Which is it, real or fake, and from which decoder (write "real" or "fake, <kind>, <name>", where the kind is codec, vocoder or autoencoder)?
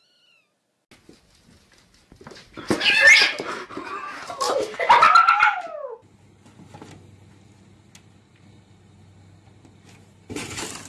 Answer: real